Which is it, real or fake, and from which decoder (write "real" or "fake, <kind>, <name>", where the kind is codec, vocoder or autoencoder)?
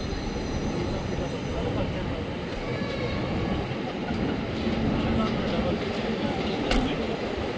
real